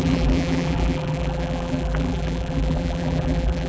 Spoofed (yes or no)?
yes